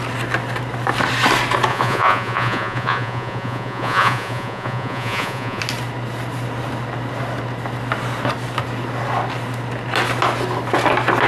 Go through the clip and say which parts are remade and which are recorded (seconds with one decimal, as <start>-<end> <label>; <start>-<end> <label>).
0.0-1.7 recorded; 1.7-5.6 remade; 5.6-11.3 recorded